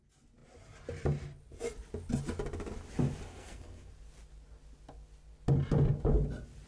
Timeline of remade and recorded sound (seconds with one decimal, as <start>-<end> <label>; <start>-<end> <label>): 0.0-3.3 recorded; 3.3-3.9 remade; 3.9-6.7 recorded